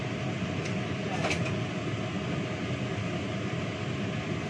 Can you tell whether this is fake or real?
real